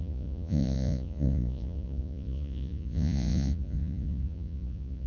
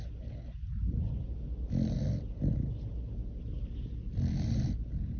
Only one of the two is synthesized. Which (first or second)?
first